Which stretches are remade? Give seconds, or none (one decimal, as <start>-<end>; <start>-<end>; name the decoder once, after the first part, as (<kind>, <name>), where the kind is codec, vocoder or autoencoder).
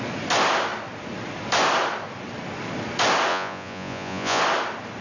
3.3-4.4 (vocoder, Vocos)